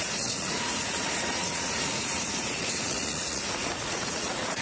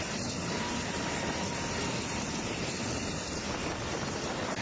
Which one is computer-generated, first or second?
first